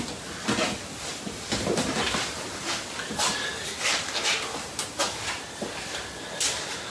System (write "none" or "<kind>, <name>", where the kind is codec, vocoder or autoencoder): none